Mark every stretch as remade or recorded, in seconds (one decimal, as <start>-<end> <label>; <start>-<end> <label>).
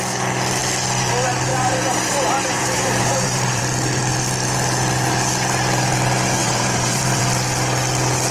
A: 0.0-1.5 recorded; 1.5-3.6 remade; 3.6-6.4 recorded; 6.4-7.2 remade; 7.2-8.3 recorded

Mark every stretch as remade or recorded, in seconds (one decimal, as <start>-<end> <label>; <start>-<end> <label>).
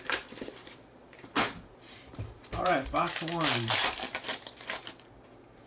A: 0.0-5.7 remade